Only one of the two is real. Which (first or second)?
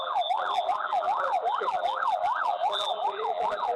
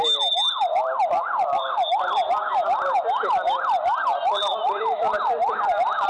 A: second